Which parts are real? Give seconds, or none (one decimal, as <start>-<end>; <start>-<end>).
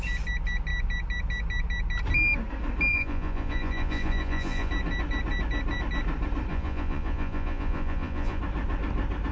0.0-2.9; 4.7-6.5; 8.4-9.3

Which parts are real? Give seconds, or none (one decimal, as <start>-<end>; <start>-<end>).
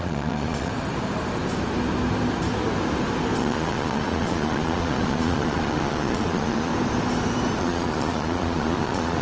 0.7-3.4; 6.7-7.6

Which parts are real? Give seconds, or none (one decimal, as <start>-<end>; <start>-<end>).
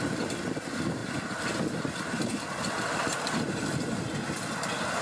0.0-5.0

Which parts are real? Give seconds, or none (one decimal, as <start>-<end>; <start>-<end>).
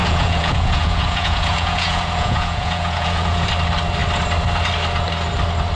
3.5-5.8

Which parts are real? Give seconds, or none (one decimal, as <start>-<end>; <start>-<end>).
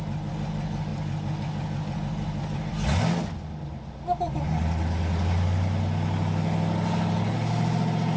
0.0-8.2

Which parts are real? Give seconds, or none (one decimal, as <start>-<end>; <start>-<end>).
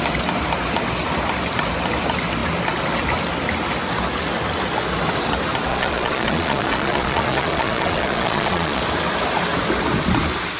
0.0-5.7; 8.8-10.6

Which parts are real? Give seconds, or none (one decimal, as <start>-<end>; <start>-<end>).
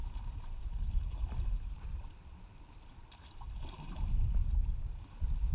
0.0-5.5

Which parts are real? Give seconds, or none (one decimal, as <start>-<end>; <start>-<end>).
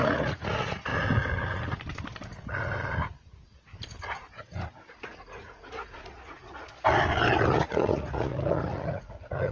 0.9-4.9; 6.7-7.3